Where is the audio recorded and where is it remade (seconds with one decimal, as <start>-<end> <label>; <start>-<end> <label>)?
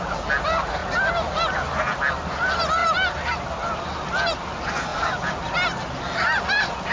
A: 0.0-6.9 recorded